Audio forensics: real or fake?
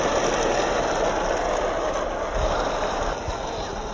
real